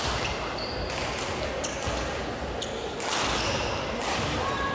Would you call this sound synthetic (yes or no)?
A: no